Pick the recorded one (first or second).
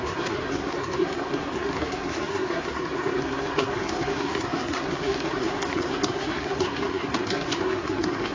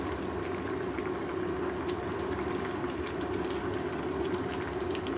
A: second